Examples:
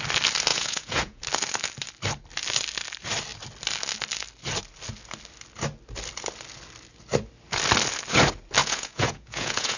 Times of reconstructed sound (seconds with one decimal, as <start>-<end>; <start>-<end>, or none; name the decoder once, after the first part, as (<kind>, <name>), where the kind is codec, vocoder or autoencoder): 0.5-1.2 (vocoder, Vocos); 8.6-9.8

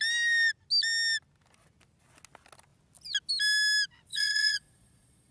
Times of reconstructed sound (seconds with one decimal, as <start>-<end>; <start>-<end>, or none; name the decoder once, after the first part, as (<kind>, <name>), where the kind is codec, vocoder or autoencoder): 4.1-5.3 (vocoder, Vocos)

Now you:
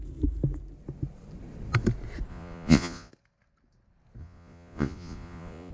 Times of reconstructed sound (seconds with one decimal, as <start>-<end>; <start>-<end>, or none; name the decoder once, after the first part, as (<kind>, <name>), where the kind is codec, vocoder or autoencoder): 2.3-3.1 (vocoder, Vocos); 4.2-5.7

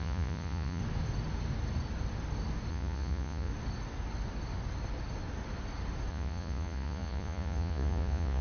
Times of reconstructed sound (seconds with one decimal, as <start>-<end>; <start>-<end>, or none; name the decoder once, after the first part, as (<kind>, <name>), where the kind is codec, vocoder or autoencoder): 0.0-0.8 (vocoder, Vocos); 2.7-3.5; 6.1-8.4

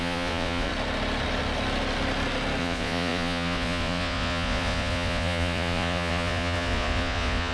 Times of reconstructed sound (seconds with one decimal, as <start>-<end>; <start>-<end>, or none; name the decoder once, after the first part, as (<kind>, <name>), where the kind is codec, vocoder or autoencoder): 0.0-0.7 (vocoder, Vocos); 2.6-7.5